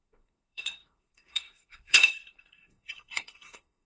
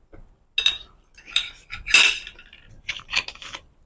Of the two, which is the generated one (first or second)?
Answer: first